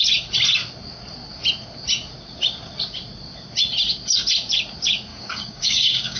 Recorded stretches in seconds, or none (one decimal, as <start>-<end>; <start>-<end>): 0.0-5.1